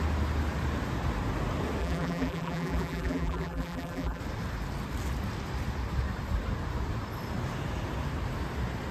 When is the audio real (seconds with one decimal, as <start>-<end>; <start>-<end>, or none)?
0.0-1.8; 4.2-8.9